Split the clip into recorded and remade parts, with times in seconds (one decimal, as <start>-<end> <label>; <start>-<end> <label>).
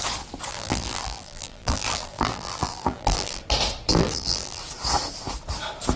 0.0-0.5 recorded; 0.5-3.4 remade; 3.4-3.9 recorded; 3.9-4.6 remade; 4.6-6.0 recorded